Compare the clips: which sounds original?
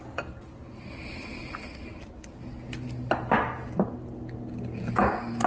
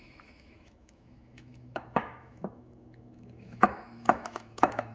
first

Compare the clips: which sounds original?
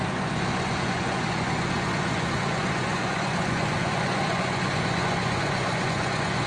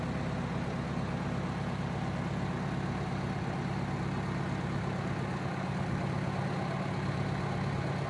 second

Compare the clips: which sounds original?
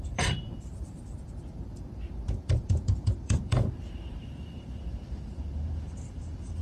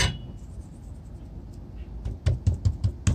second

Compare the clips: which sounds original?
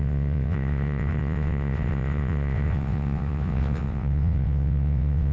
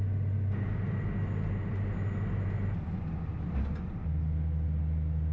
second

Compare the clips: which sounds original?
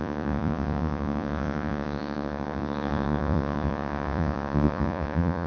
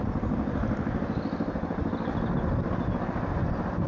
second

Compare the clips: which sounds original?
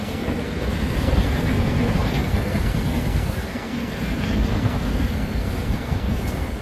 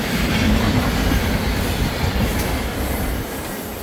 second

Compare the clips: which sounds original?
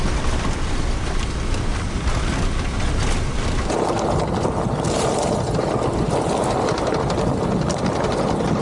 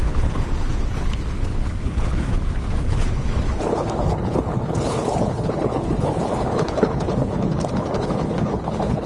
first